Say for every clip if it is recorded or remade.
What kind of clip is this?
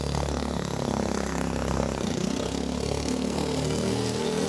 remade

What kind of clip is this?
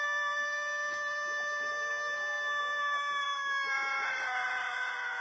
recorded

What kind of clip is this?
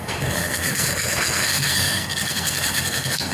remade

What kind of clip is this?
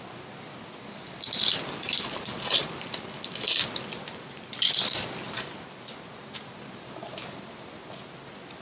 recorded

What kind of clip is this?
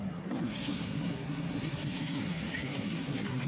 remade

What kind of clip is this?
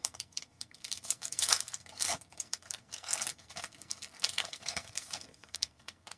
remade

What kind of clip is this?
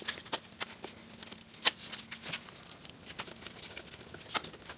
recorded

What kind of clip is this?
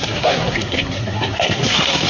remade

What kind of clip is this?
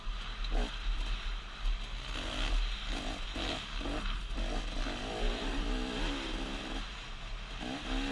recorded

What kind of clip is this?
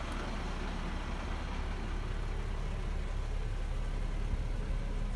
recorded